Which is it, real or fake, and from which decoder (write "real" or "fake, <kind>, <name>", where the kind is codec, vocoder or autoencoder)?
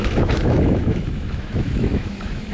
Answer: fake, autoencoder, DAC-VAE